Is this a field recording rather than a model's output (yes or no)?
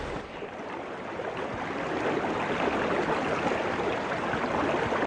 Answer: yes